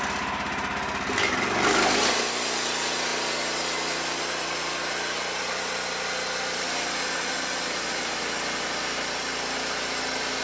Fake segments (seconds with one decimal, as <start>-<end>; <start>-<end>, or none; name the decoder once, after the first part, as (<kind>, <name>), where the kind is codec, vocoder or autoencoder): none